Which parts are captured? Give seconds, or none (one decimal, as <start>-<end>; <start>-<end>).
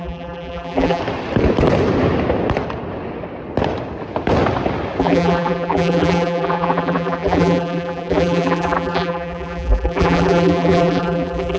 1.0-5.0